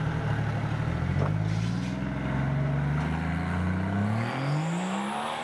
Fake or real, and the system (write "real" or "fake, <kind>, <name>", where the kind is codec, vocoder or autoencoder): real